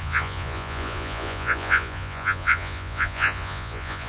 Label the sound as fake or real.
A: fake